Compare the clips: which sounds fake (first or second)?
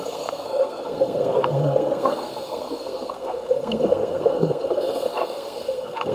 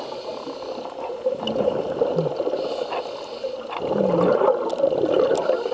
first